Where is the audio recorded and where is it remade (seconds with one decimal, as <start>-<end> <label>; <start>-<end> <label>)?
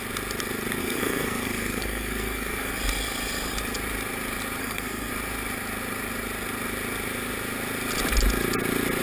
0.0-0.8 recorded; 0.8-2.7 remade; 2.7-4.6 recorded; 4.6-5.1 remade; 5.1-9.0 recorded